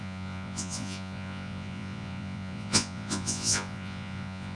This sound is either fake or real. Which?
fake